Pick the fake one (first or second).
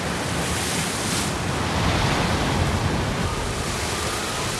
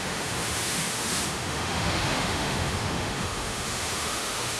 second